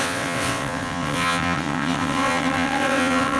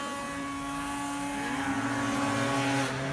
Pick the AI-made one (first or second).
first